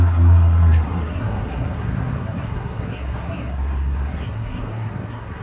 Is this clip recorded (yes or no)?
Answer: no